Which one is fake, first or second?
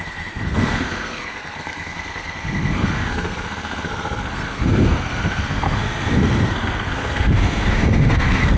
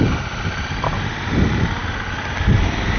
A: first